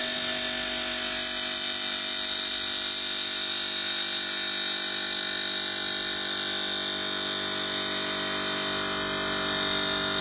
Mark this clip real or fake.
real